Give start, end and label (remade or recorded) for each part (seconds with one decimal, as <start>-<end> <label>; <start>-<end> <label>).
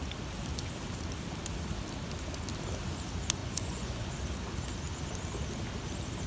0.0-3.4 recorded; 3.4-4.1 remade; 4.1-6.3 recorded